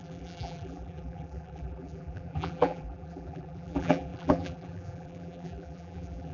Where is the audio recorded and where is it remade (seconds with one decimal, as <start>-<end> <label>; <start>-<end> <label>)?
0.0-6.3 remade